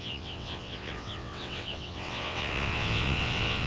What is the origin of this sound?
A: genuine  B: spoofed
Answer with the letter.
B